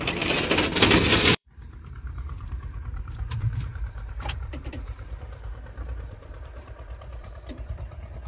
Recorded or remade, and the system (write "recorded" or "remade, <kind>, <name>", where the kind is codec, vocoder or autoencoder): remade, vocoder, BigVGAN v2